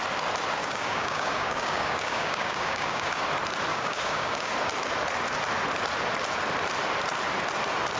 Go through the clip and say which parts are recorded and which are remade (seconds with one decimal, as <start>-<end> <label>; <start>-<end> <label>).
0.0-0.6 recorded; 0.6-3.2 remade; 3.2-3.7 recorded; 3.7-4.5 remade; 4.5-8.0 recorded